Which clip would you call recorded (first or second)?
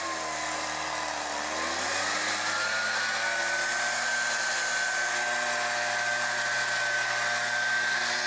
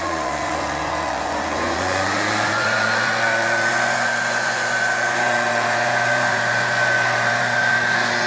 first